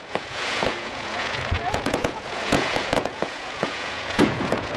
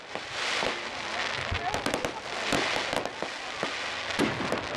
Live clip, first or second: second